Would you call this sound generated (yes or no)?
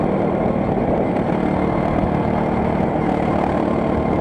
no